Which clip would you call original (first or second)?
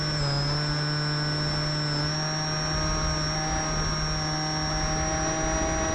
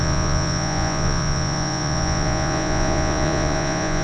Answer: first